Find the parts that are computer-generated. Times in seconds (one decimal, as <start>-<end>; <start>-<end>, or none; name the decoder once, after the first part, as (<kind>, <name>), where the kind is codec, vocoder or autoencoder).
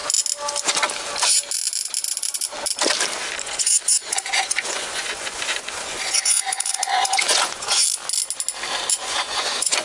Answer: 3.4-7.8 (vocoder, Vocos); 8.9-9.8